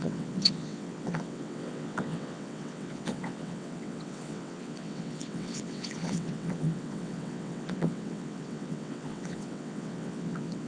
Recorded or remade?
remade